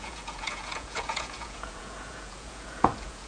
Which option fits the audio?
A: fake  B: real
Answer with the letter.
A